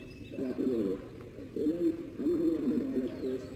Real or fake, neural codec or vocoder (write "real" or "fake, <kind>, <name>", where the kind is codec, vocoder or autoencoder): real